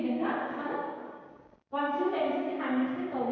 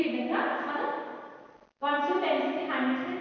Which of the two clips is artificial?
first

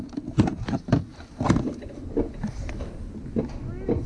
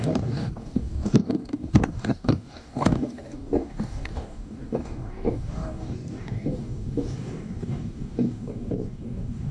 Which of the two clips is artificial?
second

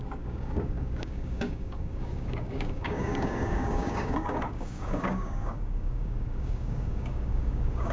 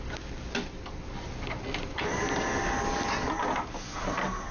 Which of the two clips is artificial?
first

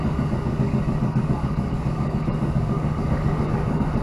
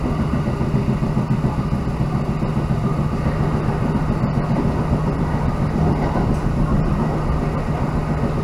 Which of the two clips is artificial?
first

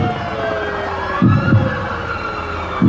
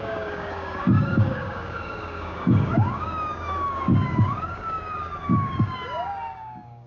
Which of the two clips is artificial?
second